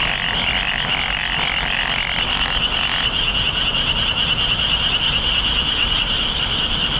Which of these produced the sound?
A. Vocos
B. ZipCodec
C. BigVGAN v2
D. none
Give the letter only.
D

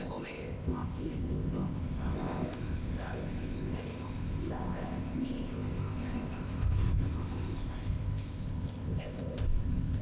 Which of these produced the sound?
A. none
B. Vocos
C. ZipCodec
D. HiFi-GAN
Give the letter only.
C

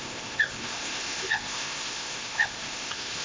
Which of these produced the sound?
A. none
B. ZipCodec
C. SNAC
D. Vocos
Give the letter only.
B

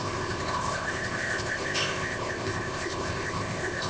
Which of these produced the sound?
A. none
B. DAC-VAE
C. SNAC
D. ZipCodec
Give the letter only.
D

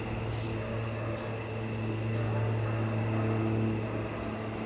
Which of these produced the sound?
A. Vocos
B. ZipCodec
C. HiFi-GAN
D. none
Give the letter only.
D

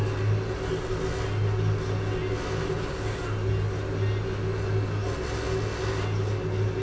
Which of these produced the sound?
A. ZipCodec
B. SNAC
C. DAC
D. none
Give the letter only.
D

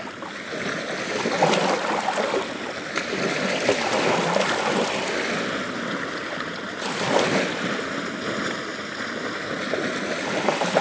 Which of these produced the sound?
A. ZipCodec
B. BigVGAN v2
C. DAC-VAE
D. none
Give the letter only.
D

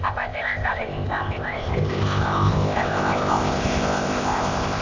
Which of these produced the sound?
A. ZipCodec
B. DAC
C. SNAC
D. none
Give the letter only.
A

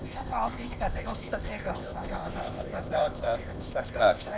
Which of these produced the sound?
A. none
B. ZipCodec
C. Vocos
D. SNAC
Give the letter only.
B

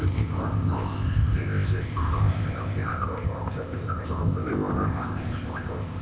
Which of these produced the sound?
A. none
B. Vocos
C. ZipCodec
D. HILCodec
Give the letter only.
C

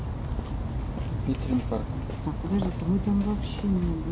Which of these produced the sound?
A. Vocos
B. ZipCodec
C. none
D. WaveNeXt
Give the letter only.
C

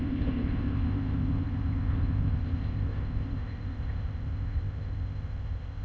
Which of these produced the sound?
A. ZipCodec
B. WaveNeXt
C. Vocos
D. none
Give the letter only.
A